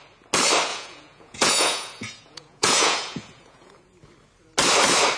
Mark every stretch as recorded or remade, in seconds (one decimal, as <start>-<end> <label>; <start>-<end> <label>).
0.0-0.7 recorded; 0.7-3.8 remade; 3.8-5.2 recorded